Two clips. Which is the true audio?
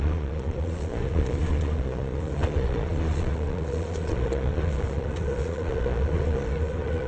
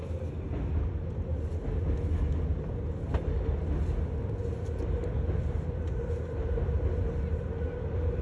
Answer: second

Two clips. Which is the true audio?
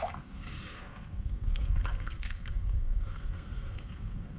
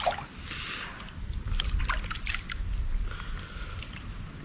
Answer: second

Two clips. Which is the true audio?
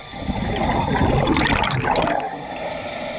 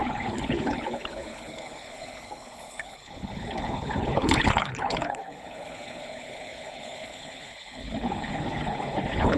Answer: first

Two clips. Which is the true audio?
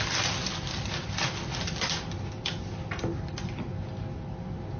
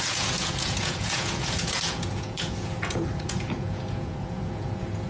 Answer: first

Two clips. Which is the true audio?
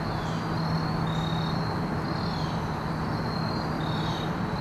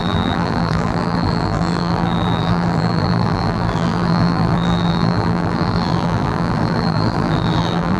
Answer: first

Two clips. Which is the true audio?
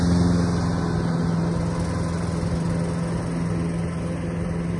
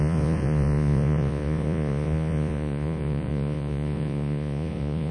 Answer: first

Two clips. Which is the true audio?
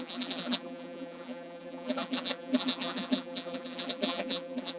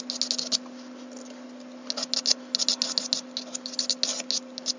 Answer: second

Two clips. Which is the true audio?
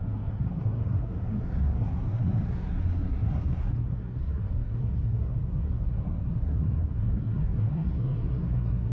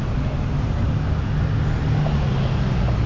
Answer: second